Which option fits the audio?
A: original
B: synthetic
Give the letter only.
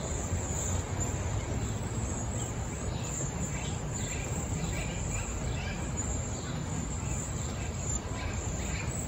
A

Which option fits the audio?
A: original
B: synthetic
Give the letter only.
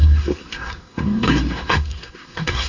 B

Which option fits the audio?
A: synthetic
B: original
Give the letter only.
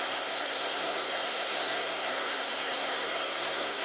A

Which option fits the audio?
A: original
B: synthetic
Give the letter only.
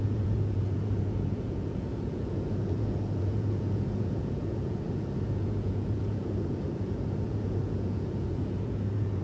B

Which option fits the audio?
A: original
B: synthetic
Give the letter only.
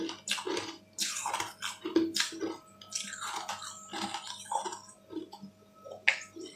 A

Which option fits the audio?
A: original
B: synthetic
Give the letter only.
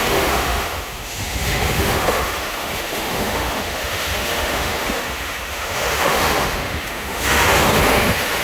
B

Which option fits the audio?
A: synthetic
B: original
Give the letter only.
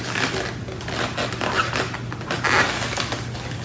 B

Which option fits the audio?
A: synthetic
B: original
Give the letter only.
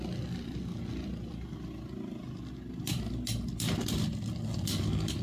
B